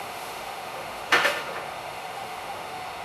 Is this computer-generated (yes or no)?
yes